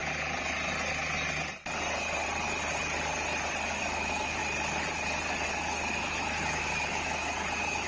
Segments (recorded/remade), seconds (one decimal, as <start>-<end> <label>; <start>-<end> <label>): 0.0-3.8 recorded; 3.8-4.4 remade; 4.4-5.5 recorded; 5.5-7.9 remade

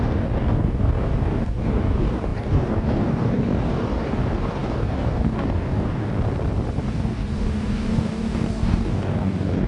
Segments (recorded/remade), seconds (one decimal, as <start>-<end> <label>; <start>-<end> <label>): 0.0-6.1 remade; 6.1-6.8 recorded; 6.8-9.7 remade

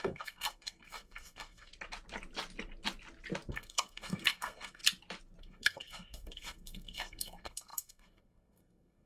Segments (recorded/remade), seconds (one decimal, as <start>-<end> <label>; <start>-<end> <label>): 0.0-1.7 remade; 1.7-3.5 recorded; 3.5-4.8 remade; 4.8-5.4 recorded; 5.4-9.1 remade

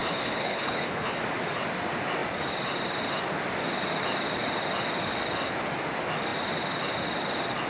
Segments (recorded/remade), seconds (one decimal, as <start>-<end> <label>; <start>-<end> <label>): 0.0-1.2 remade; 1.2-7.7 recorded

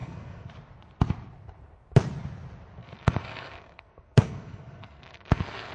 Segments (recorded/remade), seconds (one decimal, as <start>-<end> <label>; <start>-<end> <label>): 0.0-0.5 remade; 0.5-2.8 recorded; 2.8-5.7 remade

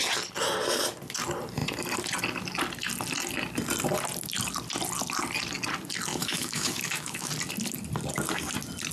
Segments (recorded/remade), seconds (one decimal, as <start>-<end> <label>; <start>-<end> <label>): 0.0-6.1 recorded; 6.1-7.3 remade; 7.3-8.9 recorded

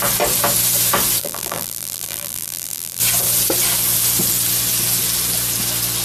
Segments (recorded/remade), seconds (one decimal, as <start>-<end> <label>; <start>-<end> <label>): 0.0-1.2 recorded; 1.2-3.0 remade; 3.0-6.0 recorded

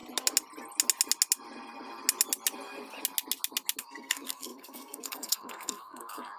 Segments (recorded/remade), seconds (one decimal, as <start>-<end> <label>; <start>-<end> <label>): 0.0-3.8 recorded; 3.8-6.4 remade